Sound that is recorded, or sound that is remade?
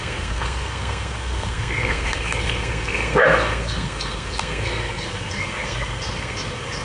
remade